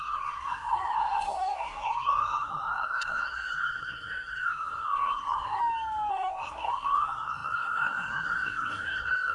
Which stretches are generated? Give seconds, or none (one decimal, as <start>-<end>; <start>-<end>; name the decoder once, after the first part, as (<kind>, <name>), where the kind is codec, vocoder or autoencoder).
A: 0.0-5.6 (codec, SNAC); 6.1-9.3